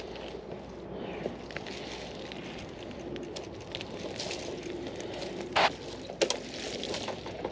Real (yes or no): yes